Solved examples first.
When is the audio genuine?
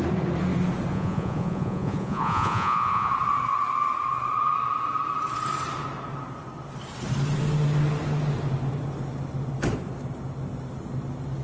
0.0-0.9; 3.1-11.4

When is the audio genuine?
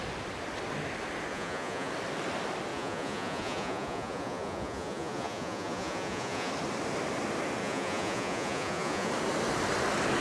0.0-1.3; 1.9-2.7; 6.5-7.6; 9.1-10.2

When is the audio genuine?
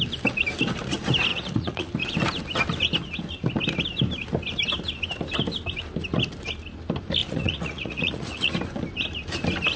0.0-1.3; 1.9-7.2; 8.5-9.8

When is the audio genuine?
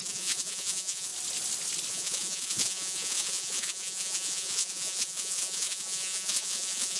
1.1-1.9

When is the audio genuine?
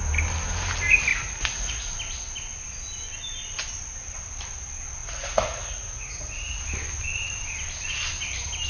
0.0-1.1; 1.9-5.0; 6.6-8.7